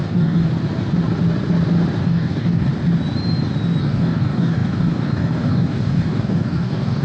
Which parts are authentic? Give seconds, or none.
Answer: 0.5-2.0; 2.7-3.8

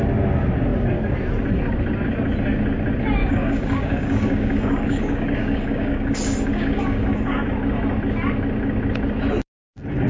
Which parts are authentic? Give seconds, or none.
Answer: 0.0-3.2; 7.5-10.1

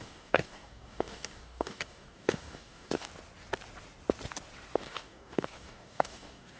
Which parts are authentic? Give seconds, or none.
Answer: 3.1-4.8